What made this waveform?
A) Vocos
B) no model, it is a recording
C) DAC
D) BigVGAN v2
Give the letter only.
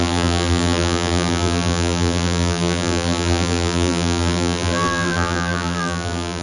D